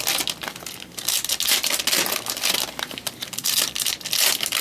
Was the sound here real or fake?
real